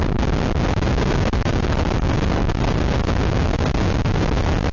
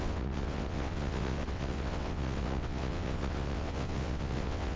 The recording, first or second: first